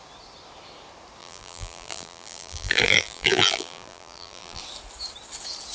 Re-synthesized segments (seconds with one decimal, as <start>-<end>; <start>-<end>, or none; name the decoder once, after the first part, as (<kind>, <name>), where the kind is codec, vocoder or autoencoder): 1.2-4.6 (vocoder, BigVGAN v2)